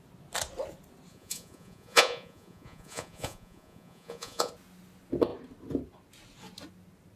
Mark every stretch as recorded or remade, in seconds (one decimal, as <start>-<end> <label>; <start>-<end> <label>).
0.0-1.1 recorded; 1.1-4.5 remade; 4.5-7.2 recorded